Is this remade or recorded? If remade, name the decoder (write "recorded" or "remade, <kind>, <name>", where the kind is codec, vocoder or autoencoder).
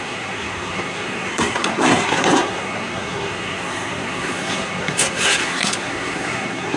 remade, codec, SNAC